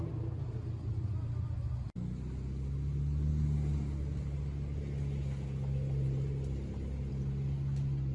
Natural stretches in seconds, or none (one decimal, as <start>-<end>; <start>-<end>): 0.0-8.1